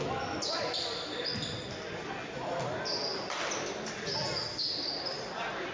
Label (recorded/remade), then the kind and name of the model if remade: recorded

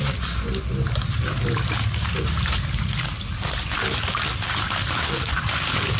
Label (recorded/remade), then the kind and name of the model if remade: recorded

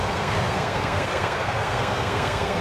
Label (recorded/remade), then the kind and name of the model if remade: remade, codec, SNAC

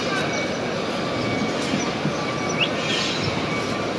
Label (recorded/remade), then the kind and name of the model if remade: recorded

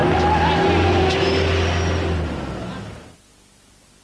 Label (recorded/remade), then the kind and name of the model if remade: recorded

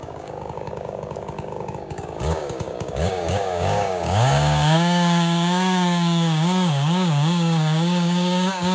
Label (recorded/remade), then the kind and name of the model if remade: remade, codec, DAC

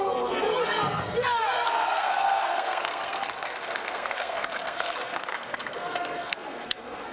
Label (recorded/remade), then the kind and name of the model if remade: remade, codec, SNAC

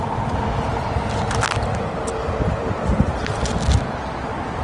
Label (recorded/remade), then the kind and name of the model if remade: recorded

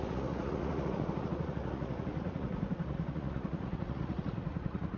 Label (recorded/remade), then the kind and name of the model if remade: remade, vocoder, Vocos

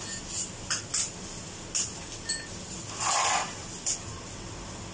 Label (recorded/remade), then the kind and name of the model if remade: recorded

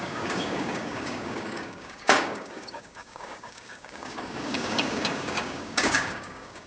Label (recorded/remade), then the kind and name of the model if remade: remade, codec, DAC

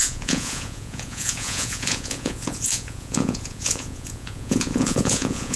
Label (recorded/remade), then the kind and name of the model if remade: remade, vocoder, Vocos